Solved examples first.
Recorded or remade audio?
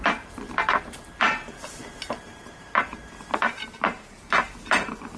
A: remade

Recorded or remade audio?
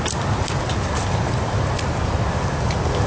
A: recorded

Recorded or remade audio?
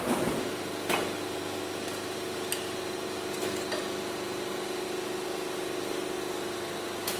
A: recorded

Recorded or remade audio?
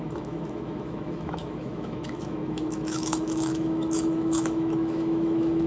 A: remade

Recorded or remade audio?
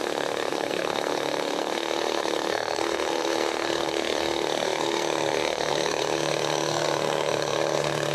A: remade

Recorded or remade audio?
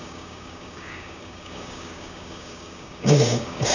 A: remade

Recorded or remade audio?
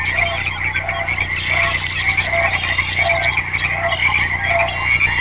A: recorded